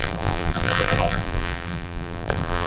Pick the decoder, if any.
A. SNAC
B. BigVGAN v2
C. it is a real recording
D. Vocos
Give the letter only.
B